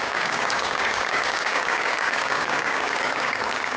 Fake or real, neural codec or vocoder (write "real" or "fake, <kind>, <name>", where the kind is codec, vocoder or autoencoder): fake, codec, DAC